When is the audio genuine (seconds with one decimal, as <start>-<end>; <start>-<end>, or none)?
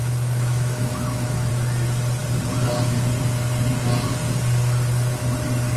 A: 1.5-5.8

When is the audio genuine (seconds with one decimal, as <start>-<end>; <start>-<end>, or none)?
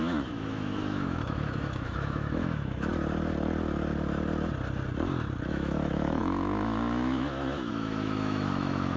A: 2.9-5.5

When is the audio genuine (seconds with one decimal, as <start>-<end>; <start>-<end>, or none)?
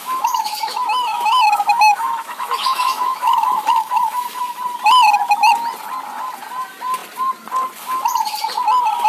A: 4.6-9.1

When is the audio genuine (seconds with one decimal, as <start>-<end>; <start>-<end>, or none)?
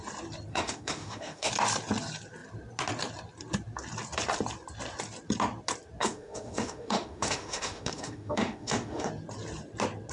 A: 0.0-0.5; 1.5-6.0; 9.1-10.1